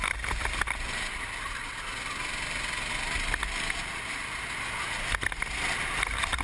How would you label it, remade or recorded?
recorded